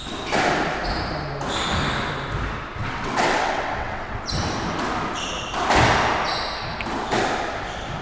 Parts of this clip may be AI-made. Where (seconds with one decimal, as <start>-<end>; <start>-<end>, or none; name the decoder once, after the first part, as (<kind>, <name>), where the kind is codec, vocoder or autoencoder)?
2.8-4.3 (vocoder, WaveNeXt)